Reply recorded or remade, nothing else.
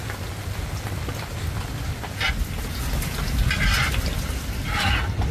recorded